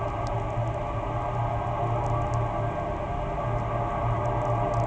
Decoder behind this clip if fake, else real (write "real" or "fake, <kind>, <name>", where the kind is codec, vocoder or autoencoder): real